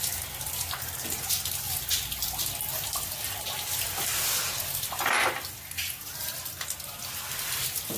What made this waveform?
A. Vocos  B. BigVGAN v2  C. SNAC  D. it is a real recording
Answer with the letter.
D